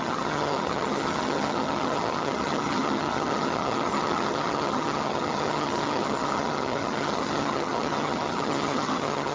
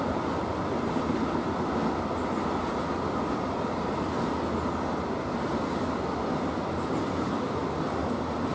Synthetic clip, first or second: first